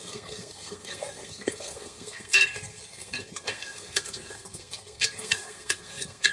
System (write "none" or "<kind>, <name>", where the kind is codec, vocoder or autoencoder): codec, SNAC